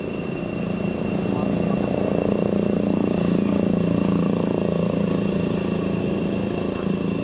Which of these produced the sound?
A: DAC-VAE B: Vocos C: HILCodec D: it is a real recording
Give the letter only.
D